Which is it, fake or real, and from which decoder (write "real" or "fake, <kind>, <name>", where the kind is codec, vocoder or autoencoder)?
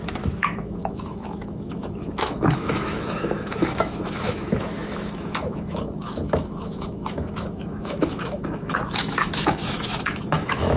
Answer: fake, autoencoder, DAC-VAE